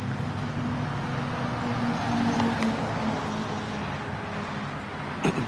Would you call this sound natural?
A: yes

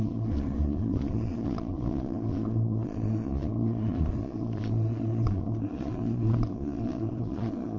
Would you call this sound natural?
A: no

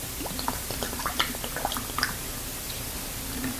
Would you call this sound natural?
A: yes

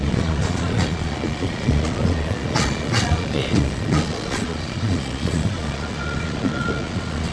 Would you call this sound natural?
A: no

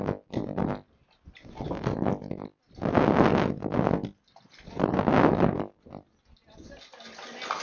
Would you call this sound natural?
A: yes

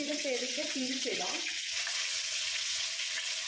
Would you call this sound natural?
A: no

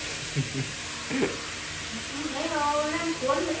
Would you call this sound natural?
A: yes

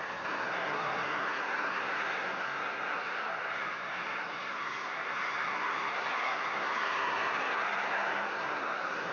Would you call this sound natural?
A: no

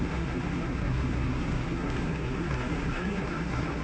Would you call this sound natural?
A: no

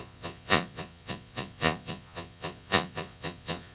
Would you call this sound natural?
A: no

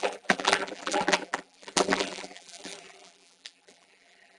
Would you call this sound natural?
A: no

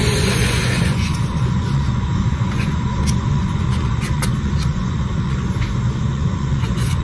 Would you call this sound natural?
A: no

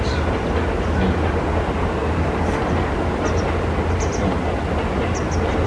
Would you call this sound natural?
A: yes